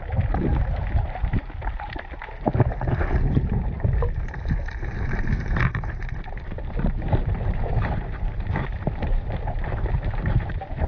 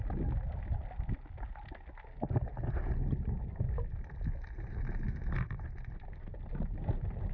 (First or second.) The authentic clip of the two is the second